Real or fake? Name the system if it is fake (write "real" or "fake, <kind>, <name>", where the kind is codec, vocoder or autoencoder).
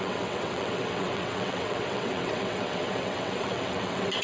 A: fake, vocoder, WaveNeXt